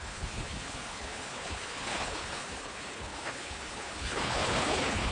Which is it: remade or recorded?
remade